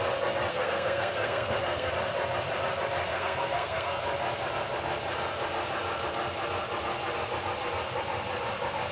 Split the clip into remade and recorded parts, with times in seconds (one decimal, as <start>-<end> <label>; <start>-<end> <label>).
0.0-0.5 recorded; 0.5-1.9 remade; 1.9-3.1 recorded; 3.1-4.0 remade; 4.0-8.9 recorded